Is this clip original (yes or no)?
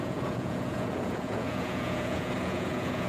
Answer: no